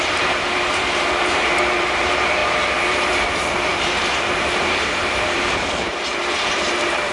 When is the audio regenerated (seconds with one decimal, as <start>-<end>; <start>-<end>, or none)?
0.0-7.1